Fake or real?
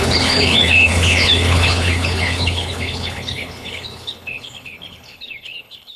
fake